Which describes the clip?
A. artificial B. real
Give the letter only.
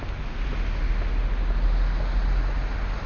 B